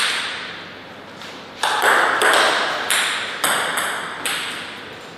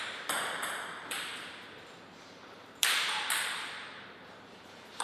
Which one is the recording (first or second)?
first